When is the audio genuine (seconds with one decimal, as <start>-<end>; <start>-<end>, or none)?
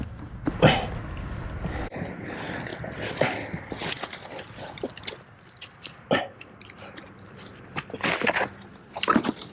0.0-9.5